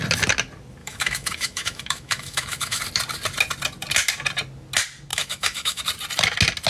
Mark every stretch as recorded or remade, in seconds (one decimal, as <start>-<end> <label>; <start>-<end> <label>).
0.0-0.8 recorded; 0.8-2.8 remade; 2.8-5.1 recorded; 5.1-5.8 remade; 5.8-6.7 recorded